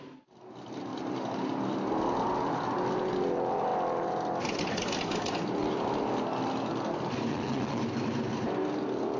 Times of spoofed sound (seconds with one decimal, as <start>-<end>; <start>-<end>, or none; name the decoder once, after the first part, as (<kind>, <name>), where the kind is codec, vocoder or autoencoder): 7.3-7.8 (vocoder, WaveNeXt)